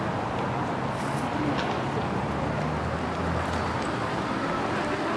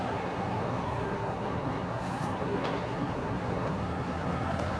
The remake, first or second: second